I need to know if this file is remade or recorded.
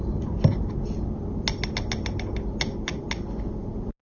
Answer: recorded